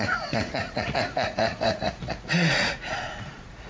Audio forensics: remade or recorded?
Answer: remade